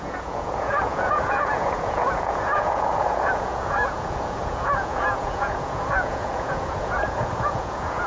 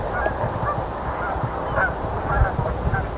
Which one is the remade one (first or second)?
first